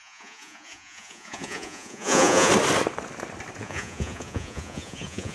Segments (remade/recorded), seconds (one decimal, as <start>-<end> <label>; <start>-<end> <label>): 0.0-2.5 remade; 2.5-3.6 recorded; 3.6-5.3 remade